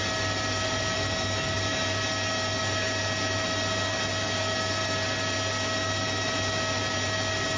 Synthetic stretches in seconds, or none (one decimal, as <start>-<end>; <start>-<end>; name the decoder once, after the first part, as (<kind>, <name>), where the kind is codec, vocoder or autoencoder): none